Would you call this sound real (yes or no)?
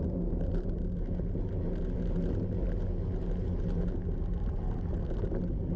yes